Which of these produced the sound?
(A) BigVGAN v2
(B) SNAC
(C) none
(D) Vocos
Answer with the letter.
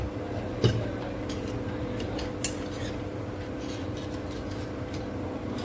C